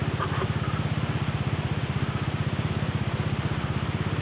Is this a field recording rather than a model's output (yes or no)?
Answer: yes